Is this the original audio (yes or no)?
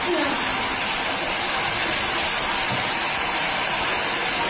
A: yes